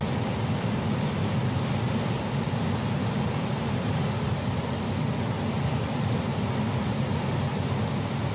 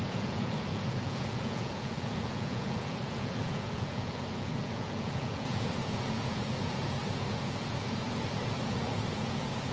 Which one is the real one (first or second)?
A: first